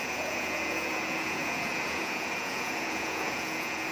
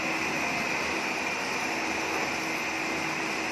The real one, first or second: second